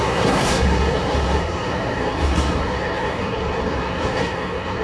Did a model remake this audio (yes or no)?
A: yes